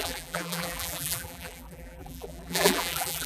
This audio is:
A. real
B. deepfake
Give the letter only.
B